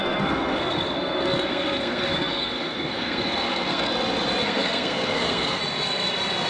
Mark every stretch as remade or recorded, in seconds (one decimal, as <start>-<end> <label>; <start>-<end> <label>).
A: 0.0-3.9 remade; 3.9-4.4 recorded; 4.4-5.6 remade; 5.6-6.5 recorded